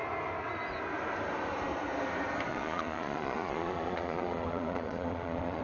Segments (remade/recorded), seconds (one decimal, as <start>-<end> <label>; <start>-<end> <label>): 0.0-2.5 recorded; 2.5-5.6 remade